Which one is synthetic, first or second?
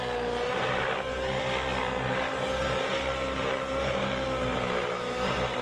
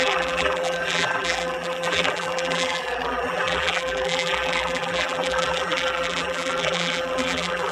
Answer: second